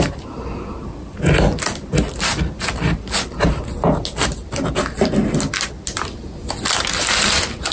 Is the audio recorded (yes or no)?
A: yes